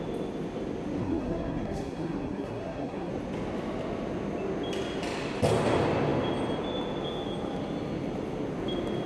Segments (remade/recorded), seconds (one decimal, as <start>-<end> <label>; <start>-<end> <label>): 0.0-1.0 recorded; 1.0-3.1 remade; 3.1-9.1 recorded